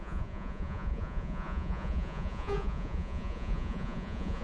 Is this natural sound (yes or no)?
no